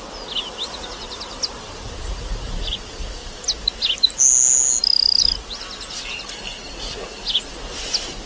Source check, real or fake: real